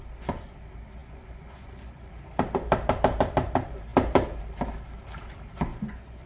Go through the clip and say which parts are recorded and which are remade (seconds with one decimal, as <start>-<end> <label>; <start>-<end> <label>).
0.0-1.0 recorded; 1.0-2.1 remade; 2.1-5.7 recorded; 5.7-6.3 remade